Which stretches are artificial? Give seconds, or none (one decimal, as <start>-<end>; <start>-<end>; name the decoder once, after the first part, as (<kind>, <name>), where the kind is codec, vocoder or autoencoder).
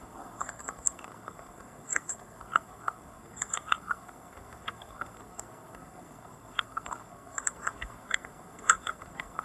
0.0-9.4 (codec, SNAC)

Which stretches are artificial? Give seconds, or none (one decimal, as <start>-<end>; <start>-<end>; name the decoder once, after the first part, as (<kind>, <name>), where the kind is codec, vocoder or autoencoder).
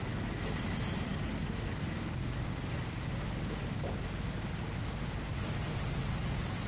none